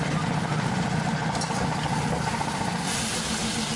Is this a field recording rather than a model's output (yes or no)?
yes